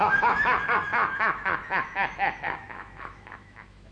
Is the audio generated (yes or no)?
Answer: yes